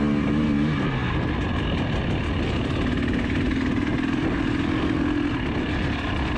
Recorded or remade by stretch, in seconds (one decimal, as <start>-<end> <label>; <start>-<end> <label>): 0.0-6.4 recorded

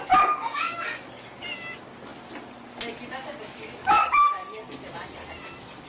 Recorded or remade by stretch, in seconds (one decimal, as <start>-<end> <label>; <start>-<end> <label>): 0.0-0.4 recorded; 0.4-1.0 remade; 1.0-3.8 recorded; 3.8-4.7 remade; 4.7-5.9 recorded

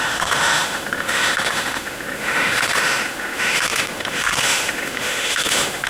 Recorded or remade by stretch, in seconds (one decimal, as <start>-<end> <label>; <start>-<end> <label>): 0.0-5.9 remade

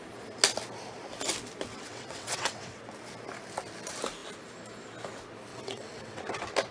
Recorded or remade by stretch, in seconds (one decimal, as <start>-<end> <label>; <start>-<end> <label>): 0.0-1.7 recorded; 1.7-2.8 remade; 2.8-5.5 recorded; 5.5-6.2 remade; 6.2-6.7 recorded

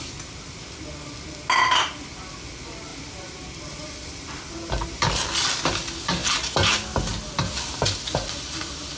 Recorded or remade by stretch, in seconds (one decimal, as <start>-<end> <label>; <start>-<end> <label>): 0.0-2.9 recorded; 2.9-5.6 remade; 5.6-9.0 recorded

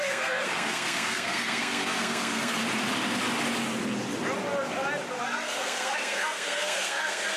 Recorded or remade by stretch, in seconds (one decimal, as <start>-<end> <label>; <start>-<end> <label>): 0.0-2.6 remade; 2.6-5.2 recorded; 5.2-7.4 remade